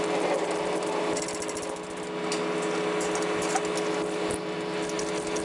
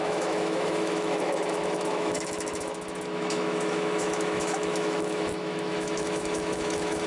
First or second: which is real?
first